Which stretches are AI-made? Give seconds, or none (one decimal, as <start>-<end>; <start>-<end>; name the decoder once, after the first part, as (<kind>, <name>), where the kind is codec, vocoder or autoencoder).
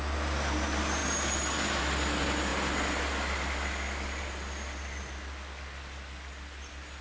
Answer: none